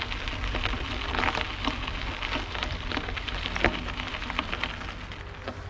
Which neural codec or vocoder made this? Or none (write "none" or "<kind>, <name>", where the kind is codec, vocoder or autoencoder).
none